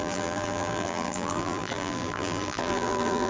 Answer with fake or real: fake